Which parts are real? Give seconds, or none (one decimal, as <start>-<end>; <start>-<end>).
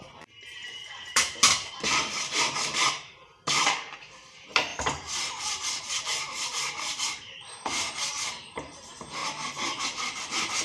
4.7-5.8